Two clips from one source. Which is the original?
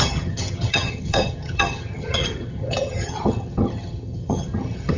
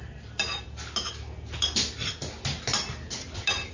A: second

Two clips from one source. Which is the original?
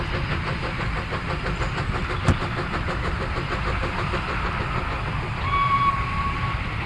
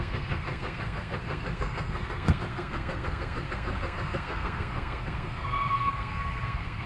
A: first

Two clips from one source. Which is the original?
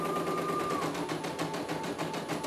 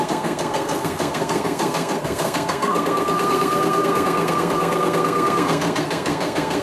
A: first